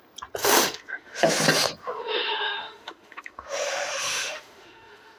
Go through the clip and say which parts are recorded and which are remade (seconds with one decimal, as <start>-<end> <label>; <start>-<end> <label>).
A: 0.0-0.4 recorded; 0.4-1.3 remade; 1.3-1.8 recorded; 1.8-5.2 remade